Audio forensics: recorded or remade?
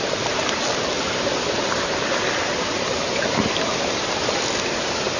recorded